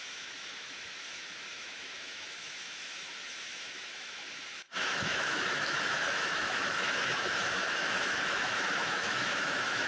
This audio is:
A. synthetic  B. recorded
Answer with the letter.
A